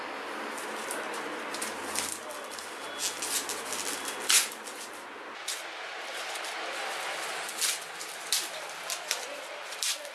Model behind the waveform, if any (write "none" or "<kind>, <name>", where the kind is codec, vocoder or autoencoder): none